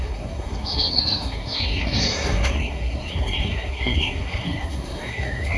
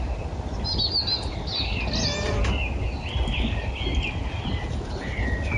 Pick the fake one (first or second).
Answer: first